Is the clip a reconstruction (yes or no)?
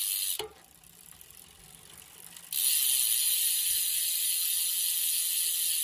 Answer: no